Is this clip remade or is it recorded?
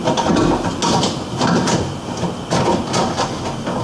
recorded